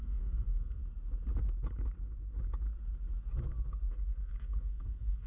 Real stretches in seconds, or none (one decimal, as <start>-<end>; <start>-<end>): 0.8-3.9